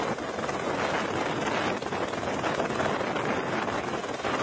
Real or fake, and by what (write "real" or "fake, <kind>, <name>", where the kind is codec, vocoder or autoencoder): real